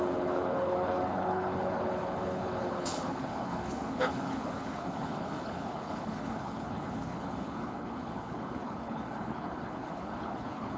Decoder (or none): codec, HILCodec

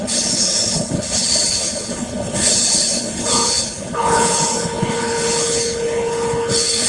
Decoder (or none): codec, HILCodec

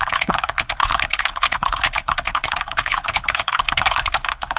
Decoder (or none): codec, HILCodec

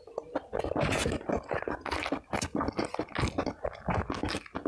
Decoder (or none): none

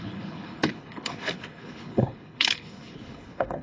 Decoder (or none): codec, HILCodec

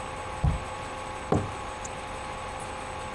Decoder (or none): none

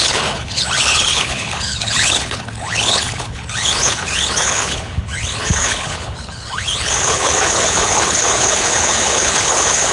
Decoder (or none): codec, HILCodec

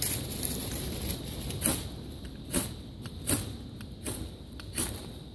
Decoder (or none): none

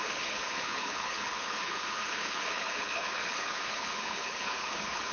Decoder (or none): codec, HILCodec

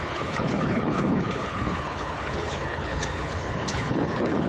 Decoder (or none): codec, HILCodec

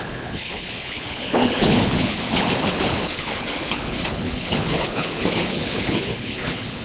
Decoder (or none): codec, HILCodec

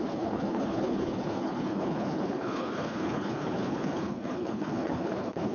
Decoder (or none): codec, HILCodec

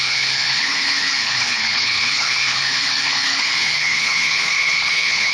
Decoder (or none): codec, HILCodec